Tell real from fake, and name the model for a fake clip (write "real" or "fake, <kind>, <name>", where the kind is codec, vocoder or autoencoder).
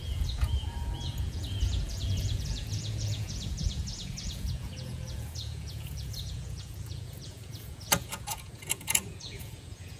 fake, vocoder, Vocos